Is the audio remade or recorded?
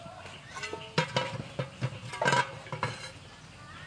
recorded